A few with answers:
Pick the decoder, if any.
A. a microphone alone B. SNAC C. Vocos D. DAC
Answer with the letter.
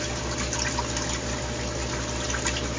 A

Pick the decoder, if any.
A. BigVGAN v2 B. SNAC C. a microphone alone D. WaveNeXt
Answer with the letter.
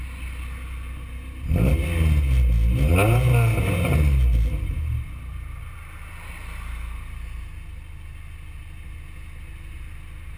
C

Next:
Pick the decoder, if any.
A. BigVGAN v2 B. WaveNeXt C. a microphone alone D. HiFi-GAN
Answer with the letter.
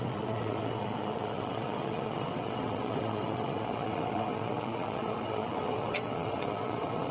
B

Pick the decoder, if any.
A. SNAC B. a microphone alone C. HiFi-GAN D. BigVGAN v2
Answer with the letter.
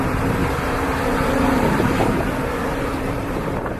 D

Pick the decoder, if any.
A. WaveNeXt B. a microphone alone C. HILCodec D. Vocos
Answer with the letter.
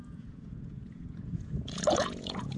D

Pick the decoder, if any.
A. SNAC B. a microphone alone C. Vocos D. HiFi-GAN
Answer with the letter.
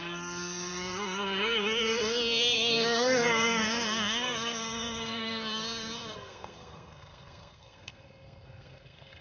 A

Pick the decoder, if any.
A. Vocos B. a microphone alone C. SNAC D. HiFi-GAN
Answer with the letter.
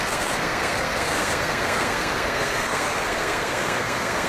C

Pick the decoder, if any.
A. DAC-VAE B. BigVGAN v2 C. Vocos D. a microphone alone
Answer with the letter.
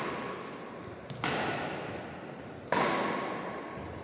D